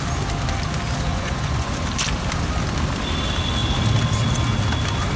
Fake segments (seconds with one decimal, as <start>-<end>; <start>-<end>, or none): 1.1-1.7